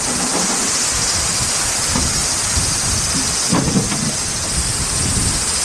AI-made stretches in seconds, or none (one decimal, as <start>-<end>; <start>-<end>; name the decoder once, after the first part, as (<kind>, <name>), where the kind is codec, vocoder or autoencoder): none